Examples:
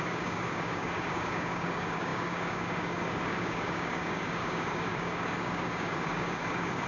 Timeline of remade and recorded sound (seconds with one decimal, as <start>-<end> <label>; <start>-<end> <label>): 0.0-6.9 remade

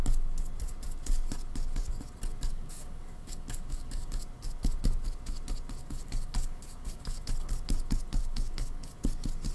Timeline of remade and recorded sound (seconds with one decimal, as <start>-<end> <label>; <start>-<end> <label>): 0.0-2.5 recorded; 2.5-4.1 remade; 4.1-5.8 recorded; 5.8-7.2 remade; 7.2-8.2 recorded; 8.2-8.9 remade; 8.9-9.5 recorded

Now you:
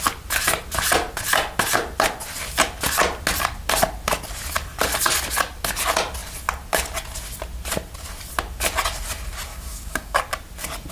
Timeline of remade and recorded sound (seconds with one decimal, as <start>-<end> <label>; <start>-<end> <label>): 0.0-9.5 recorded; 9.5-10.2 remade; 10.2-10.9 recorded

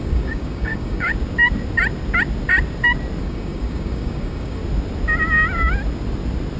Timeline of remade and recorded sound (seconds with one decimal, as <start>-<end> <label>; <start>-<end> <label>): 0.0-1.1 remade; 1.1-3.2 recorded; 3.2-4.6 remade; 4.6-6.6 recorded

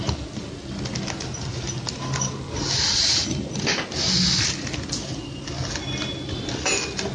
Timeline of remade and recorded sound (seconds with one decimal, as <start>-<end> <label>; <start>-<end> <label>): 0.0-7.1 recorded

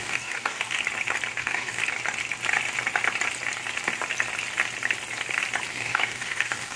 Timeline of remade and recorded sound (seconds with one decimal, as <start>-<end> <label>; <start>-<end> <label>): 0.0-0.8 remade; 0.8-1.4 recorded; 1.4-1.8 remade; 1.8-5.7 recorded; 5.7-6.8 remade

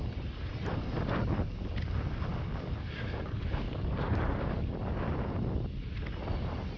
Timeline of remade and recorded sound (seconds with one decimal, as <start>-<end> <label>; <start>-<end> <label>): 0.0-2.3 recorded; 2.3-4.6 remade; 4.6-6.8 recorded